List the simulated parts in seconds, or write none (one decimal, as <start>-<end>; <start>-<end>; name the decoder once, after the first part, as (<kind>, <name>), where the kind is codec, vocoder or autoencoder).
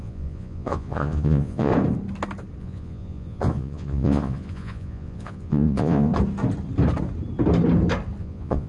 0.0-1.7 (vocoder, Vocos); 2.6-6.1; 8.2-8.7